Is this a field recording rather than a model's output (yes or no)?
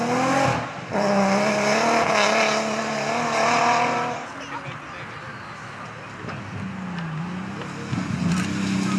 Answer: yes